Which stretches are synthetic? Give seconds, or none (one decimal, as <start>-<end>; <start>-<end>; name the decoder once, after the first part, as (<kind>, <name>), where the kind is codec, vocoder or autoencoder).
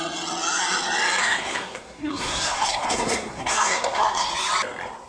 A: 1.2-4.3 (codec, SNAC)